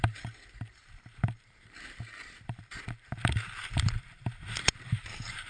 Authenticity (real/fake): fake